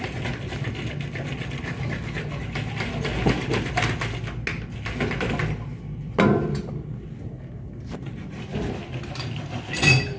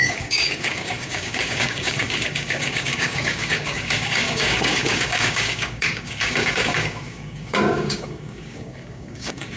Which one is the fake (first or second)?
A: second